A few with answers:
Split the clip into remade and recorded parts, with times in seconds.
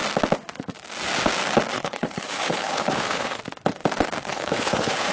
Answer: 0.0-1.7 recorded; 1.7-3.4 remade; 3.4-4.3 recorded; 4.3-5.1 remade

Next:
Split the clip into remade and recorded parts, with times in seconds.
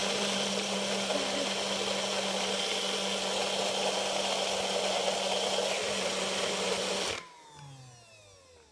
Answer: 0.0-8.7 recorded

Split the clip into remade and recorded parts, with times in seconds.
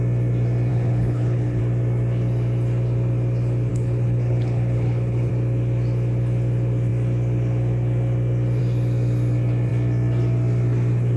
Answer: 0.0-0.7 recorded; 0.7-1.6 remade; 1.6-3.7 recorded; 3.7-5.3 remade; 5.3-11.2 recorded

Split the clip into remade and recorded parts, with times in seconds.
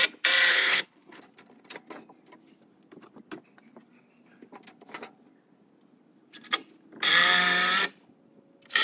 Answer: 0.0-0.5 recorded; 0.5-1.2 remade; 1.2-8.8 recorded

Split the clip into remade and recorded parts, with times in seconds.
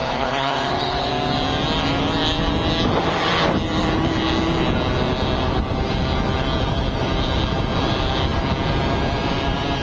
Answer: 0.0-1.1 remade; 1.1-9.8 recorded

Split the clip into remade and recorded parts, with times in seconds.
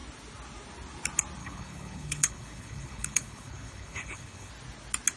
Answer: 0.0-1.4 recorded; 1.4-4.5 remade; 4.5-5.2 recorded